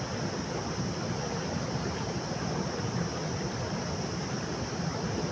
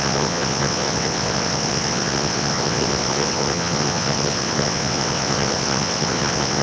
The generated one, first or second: second